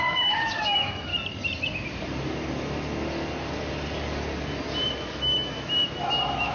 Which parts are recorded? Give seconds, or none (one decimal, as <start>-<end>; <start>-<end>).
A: 1.1-5.0